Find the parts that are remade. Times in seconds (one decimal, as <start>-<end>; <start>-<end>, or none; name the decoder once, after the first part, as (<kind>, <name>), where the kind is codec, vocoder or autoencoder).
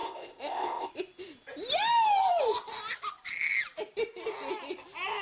0.0-0.9 (codec, ZipCodec)